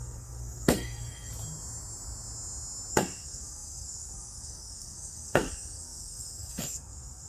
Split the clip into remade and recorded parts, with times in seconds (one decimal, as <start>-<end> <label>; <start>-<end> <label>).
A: 0.0-1.3 remade; 1.3-2.9 recorded; 2.9-7.3 remade